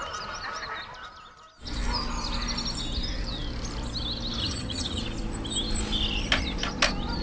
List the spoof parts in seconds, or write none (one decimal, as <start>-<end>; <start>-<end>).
4.4-5.0